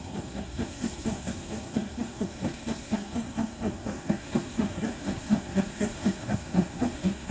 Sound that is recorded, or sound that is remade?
remade